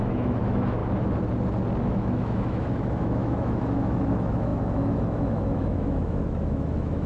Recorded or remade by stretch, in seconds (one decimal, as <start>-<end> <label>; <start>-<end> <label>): 0.0-0.8 remade; 0.8-1.8 recorded; 1.8-7.1 remade